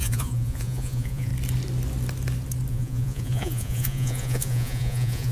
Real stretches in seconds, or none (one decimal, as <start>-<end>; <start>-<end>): 1.3-2.7